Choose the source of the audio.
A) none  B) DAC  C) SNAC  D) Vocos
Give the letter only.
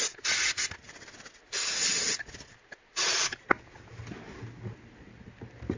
A